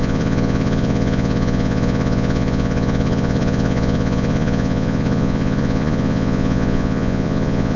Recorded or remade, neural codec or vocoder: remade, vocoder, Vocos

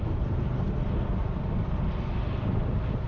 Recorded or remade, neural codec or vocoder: recorded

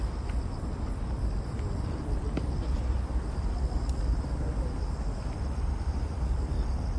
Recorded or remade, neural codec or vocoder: recorded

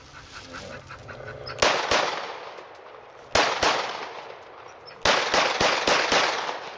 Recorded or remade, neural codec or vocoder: recorded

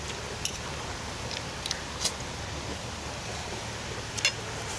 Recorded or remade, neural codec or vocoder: recorded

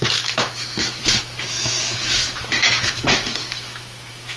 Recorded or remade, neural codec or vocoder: remade, autoencoder, DAC-VAE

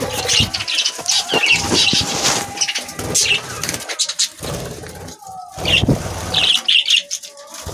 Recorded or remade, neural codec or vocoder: recorded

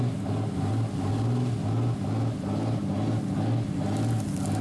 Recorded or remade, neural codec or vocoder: recorded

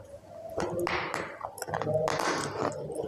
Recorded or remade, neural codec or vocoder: recorded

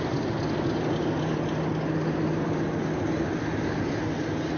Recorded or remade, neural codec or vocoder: recorded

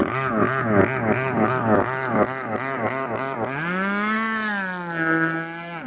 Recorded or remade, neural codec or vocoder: recorded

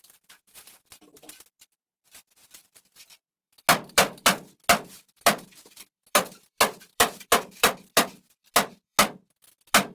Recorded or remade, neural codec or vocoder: remade, vocoder, BigVGAN v2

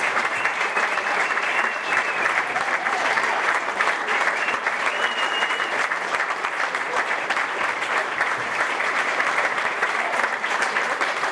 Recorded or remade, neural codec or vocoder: remade, vocoder, BigVGAN v2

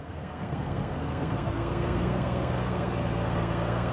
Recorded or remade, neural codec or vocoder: remade, codec, SNAC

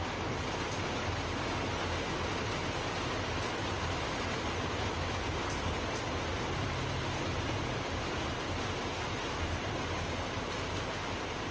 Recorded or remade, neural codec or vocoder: recorded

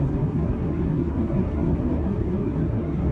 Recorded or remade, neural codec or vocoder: remade, codec, SNAC